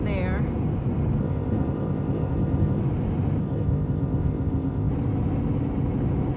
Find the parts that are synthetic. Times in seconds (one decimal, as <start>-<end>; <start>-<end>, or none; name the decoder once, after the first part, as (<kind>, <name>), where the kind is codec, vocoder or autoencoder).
1.2-2.8 (codec, ZipCodec); 3.4-4.9